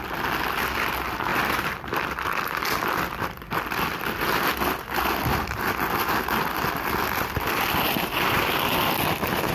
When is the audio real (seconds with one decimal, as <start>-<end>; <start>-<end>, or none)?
0.0-1.3; 1.9-9.5